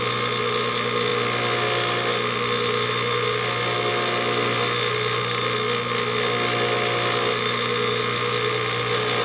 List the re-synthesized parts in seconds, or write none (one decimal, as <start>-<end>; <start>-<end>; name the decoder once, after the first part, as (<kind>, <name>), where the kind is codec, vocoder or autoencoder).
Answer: none